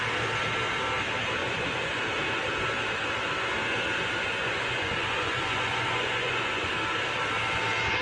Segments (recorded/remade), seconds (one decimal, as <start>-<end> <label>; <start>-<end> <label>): 0.0-1.4 recorded; 1.4-2.0 remade; 2.0-4.4 recorded; 4.4-6.7 remade; 6.7-8.0 recorded